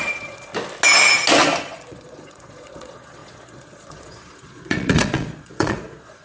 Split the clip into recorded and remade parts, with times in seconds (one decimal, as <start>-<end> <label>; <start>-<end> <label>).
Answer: 0.0-0.5 remade; 0.5-1.6 recorded; 1.6-6.2 remade